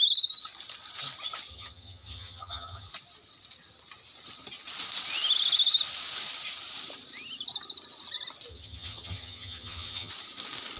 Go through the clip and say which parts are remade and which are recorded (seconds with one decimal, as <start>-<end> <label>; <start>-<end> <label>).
0.0-1.5 recorded; 1.5-2.9 remade; 2.9-8.5 recorded; 8.5-10.1 remade; 10.1-10.8 recorded